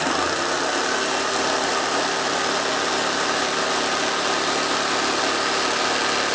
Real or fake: real